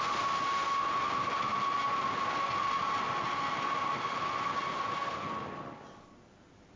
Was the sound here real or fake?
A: real